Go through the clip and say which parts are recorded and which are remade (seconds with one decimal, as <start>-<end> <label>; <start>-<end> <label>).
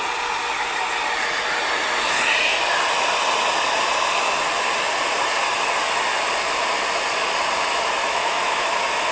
0.0-8.0 recorded; 8.0-8.7 remade; 8.7-9.1 recorded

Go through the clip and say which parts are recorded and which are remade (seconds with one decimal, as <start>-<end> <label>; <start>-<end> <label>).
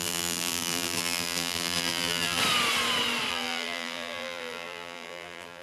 0.0-2.4 remade; 2.4-3.3 recorded; 3.3-5.6 remade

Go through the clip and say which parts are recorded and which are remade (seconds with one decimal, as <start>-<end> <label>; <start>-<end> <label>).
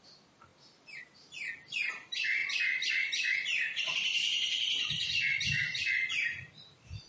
0.0-7.1 remade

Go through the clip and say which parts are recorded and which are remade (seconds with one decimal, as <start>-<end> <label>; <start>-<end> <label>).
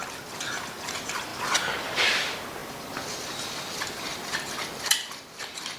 0.0-5.8 recorded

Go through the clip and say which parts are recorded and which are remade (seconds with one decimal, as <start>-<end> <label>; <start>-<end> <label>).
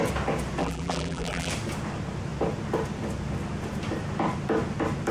0.0-0.6 recorded; 0.6-1.5 remade; 1.5-5.1 recorded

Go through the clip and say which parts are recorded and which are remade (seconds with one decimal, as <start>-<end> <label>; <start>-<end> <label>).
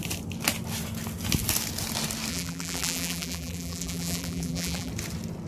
0.0-2.3 recorded; 2.3-4.9 remade; 4.9-5.5 recorded